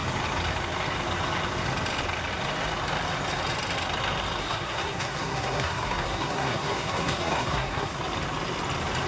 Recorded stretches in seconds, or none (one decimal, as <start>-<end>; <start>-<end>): 0.0-4.4; 8.0-9.1